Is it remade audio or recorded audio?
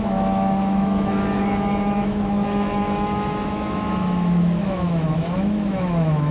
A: remade